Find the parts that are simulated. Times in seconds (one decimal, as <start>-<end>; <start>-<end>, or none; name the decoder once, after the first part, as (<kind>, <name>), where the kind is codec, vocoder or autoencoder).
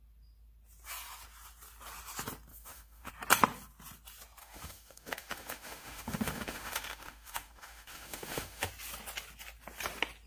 2.5-3.1 (autoencoder, DAC-VAE); 4.4-8.7